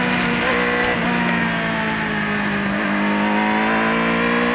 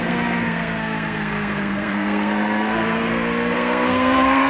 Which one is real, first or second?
first